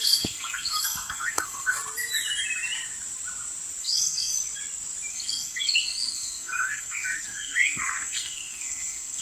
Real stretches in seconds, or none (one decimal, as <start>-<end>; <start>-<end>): 1.8-3.8; 4.3-5.1